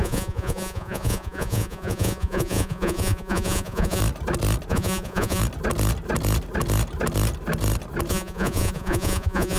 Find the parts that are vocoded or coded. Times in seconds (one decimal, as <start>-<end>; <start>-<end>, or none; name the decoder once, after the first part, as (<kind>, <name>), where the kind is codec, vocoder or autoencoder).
0.0-4.0 (vocoder, Vocos); 4.7-5.4; 8.1-9.6